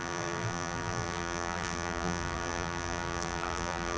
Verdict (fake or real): fake